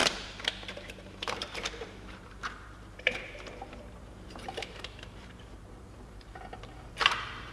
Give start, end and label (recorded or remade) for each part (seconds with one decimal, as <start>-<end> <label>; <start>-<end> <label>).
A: 0.0-7.5 remade